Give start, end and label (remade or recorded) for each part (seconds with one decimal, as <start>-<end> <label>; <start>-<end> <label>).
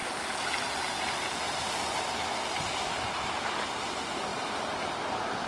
0.0-4.3 recorded; 4.3-5.0 remade; 5.0-5.5 recorded